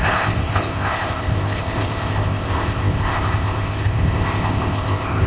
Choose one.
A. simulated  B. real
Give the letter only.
A